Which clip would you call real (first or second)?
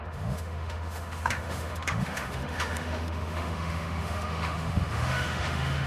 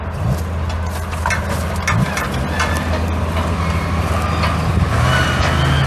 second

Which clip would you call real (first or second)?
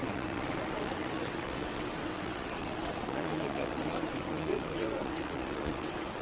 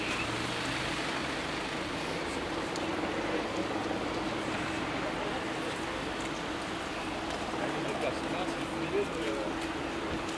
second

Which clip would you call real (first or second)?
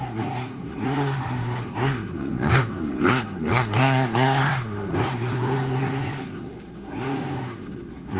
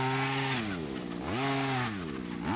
second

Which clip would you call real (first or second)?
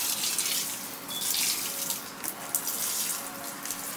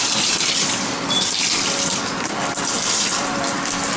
first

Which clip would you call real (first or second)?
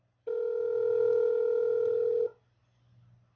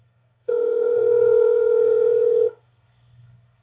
first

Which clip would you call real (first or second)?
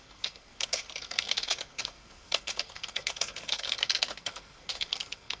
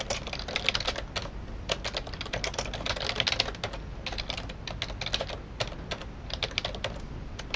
second